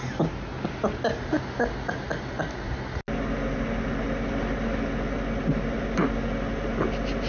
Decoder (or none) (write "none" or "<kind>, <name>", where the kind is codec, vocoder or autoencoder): none